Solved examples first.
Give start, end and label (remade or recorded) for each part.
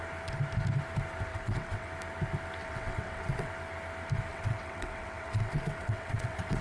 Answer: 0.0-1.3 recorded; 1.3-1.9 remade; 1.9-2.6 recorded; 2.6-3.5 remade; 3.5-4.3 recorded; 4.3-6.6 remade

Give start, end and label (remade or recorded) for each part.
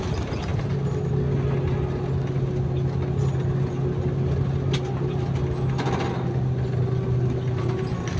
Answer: 0.0-8.2 recorded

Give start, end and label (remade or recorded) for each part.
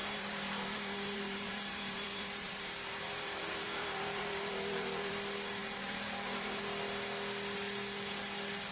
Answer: 0.0-5.1 remade; 5.1-5.6 recorded; 5.6-6.6 remade; 6.6-8.7 recorded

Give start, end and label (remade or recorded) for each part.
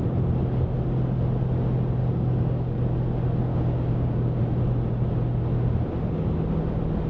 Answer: 0.0-2.0 recorded; 2.0-2.8 remade; 2.8-3.5 recorded; 3.5-4.4 remade; 4.4-7.1 recorded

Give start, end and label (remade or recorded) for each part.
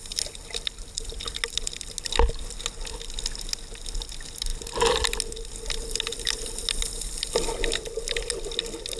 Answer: 0.0-9.0 recorded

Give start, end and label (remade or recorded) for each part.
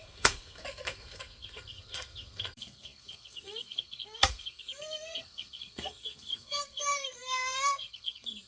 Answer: 0.0-8.5 remade